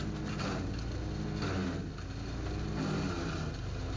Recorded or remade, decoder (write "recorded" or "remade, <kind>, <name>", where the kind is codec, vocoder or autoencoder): recorded